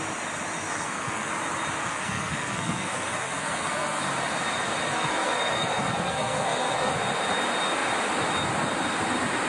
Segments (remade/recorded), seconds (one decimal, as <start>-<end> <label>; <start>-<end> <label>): 0.0-0.7 recorded; 0.7-1.3 remade; 1.3-1.8 recorded; 1.8-4.0 remade; 4.0-4.9 recorded; 4.9-6.9 remade; 6.9-9.5 recorded